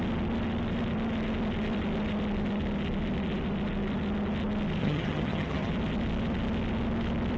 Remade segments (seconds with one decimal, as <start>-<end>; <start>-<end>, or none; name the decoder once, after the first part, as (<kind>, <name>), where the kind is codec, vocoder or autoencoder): 4.8-5.7 (vocoder, HiFi-GAN)